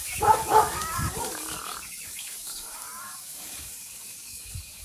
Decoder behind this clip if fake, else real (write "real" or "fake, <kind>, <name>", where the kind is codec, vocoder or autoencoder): fake, codec, DAC